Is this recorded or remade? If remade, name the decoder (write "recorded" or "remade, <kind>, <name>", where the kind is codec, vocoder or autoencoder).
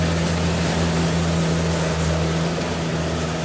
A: recorded